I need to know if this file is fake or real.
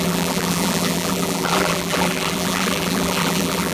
fake